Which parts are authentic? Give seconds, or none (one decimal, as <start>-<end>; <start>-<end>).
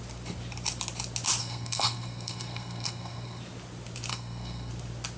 0.0-1.4; 3.4-4.1; 4.7-5.2